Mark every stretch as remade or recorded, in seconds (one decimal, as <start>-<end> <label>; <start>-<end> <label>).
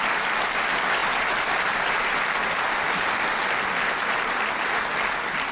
0.0-5.5 recorded